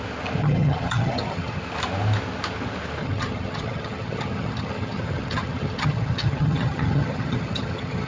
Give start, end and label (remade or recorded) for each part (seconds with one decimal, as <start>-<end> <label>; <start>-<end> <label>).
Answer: 0.0-0.4 recorded; 0.4-1.6 remade; 1.6-3.0 recorded; 3.0-8.1 remade